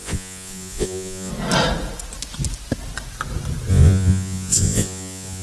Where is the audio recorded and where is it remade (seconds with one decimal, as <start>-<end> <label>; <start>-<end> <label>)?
0.0-1.3 remade; 1.3-3.7 recorded; 3.7-5.4 remade